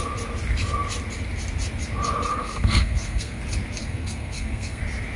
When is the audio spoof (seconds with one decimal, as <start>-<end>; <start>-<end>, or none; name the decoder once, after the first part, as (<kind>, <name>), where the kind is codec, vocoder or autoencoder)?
2.3-3.4 (codec, SNAC); 3.8-4.8

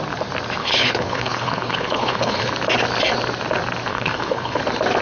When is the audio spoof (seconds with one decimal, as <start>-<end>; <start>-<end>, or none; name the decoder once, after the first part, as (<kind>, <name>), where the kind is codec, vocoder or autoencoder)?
0.6-2.5 (codec, HILCodec); 3.9-4.6

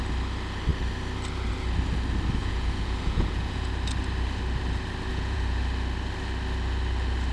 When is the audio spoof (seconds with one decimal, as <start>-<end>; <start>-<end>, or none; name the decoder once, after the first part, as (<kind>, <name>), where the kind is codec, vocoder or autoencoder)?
2.4-3.7 (vocoder, Vocos); 5.1-5.6

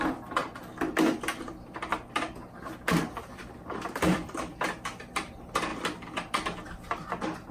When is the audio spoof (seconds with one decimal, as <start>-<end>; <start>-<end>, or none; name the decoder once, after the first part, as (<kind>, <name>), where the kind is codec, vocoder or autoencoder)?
0.0-0.4 (vocoder, BigVGAN v2); 3.3-7.5

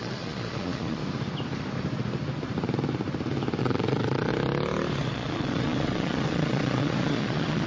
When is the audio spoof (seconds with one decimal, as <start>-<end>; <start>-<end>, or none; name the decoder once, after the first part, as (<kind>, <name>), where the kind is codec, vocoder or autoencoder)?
0.0-1.0 (vocoder, Vocos); 3.6-4.3; 5.1-7.7

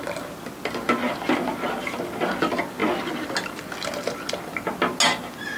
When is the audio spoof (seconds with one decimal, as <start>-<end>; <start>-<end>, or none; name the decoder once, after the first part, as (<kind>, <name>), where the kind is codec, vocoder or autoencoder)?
none

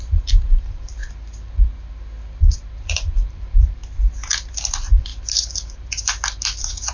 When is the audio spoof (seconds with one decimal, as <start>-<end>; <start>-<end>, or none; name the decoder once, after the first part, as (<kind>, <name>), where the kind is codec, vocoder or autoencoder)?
0.0-1.0 (vocoder, BigVGAN v2); 2.8-3.8; 4.5-6.9

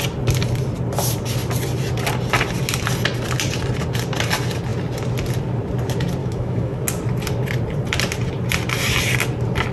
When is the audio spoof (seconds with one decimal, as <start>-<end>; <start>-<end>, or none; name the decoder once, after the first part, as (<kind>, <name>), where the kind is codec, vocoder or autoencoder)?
6.2-6.8 (autoencoder, DAC-VAE)